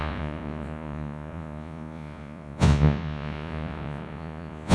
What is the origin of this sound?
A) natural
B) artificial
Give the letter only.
B